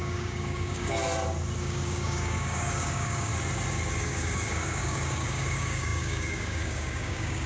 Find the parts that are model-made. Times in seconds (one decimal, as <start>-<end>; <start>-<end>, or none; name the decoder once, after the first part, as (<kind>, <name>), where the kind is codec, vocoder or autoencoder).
0.0-1.0 (codec, DAC); 1.6-3.3; 4.0-7.5